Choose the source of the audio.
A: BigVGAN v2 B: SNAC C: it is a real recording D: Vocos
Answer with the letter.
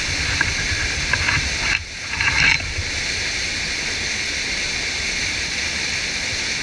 C